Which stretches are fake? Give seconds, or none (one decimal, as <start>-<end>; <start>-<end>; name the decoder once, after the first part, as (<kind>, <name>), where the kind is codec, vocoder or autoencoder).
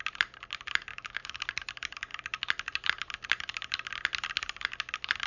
0.9-1.4 (autoencoder, DAC-VAE)